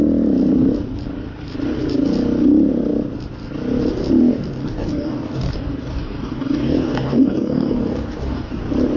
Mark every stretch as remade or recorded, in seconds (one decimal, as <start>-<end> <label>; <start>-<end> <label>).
0.0-4.6 recorded; 4.6-8.6 remade; 8.6-9.0 recorded